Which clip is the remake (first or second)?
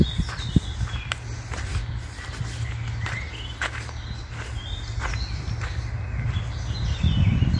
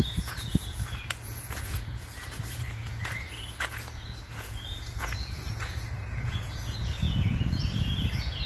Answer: second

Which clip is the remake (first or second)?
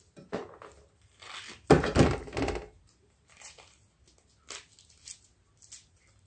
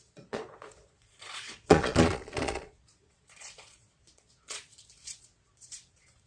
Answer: second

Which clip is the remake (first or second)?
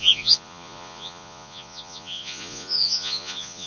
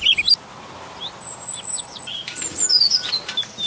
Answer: first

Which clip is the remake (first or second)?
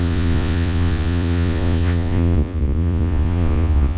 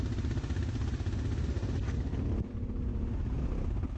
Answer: first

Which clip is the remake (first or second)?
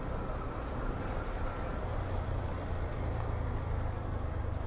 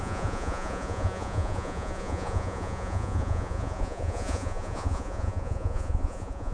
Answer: second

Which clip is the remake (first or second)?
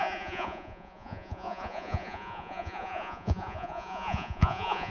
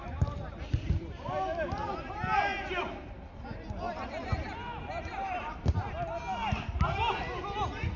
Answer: first